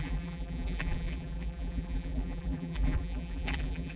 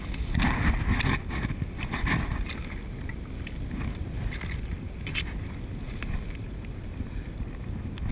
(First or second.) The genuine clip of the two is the second